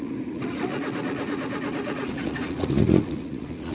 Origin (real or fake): fake